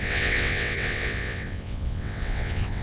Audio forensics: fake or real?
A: fake